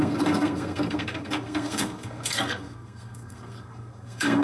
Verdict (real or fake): fake